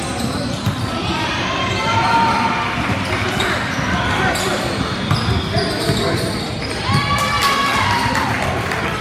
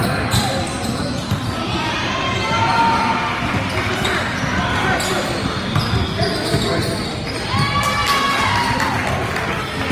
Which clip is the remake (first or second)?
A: first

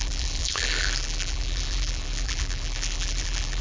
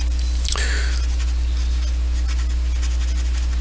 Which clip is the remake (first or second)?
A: first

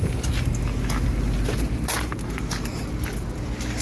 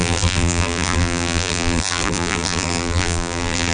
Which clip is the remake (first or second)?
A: second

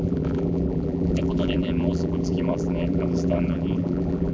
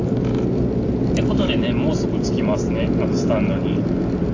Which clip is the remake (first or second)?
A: first